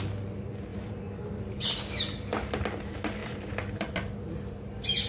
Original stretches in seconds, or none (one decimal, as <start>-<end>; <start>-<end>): 0.0-0.7; 1.7-3.2; 3.9-5.1